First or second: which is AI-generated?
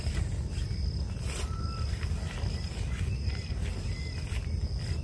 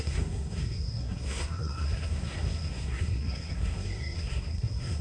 second